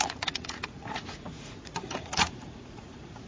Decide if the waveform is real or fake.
fake